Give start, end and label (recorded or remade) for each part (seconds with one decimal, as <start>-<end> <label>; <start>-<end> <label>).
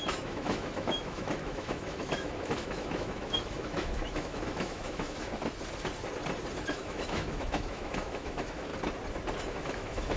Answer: 0.0-5.3 remade; 5.3-6.7 recorded; 6.7-8.7 remade; 8.7-9.5 recorded; 9.5-10.2 remade